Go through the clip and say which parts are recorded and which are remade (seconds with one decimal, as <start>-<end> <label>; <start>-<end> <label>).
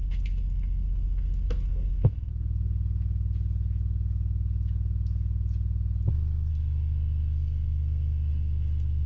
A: 0.0-2.3 remade; 2.3-6.5 recorded; 6.5-9.1 remade